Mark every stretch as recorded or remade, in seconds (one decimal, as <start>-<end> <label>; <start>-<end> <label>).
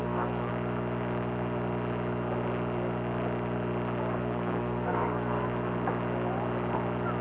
0.0-0.5 remade; 0.5-4.2 recorded; 4.2-5.4 remade; 5.4-7.2 recorded